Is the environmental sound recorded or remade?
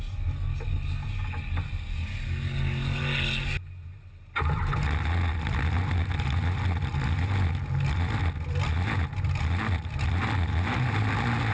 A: recorded